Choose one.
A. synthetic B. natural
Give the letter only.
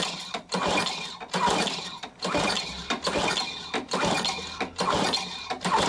B